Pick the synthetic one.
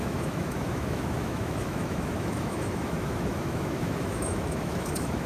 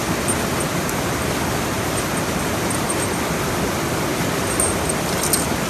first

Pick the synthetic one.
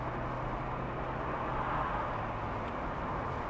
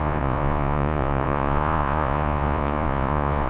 second